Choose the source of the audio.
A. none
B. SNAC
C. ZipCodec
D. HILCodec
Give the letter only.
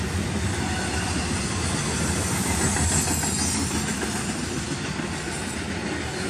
A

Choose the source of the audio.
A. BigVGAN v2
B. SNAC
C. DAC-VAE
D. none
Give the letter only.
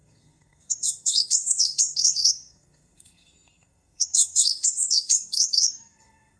B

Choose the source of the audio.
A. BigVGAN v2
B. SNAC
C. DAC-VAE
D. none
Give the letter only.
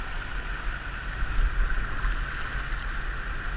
D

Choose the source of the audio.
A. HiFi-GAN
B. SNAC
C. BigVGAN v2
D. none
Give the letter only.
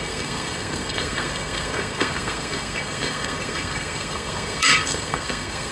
B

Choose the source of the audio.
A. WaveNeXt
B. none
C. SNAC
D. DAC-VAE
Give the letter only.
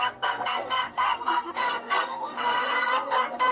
C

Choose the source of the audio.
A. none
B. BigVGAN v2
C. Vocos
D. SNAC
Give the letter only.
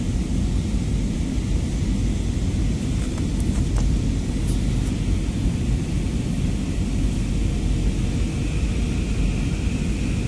A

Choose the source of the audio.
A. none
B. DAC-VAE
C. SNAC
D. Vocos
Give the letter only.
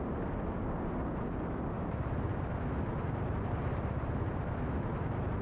A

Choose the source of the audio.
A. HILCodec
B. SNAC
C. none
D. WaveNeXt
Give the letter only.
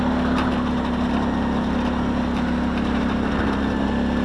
C